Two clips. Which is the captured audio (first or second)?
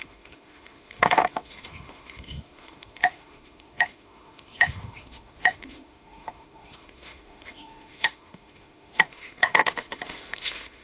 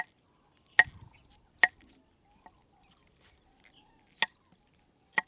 second